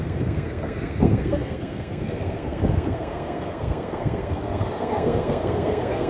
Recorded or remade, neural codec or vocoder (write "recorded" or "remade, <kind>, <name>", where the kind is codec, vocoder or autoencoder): remade, codec, SNAC